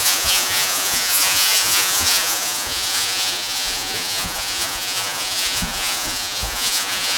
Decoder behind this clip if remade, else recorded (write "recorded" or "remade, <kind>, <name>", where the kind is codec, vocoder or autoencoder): remade, vocoder, Vocos